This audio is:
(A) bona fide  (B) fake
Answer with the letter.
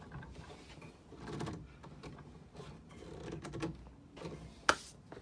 A